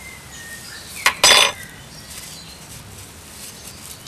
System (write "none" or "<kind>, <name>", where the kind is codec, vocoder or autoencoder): none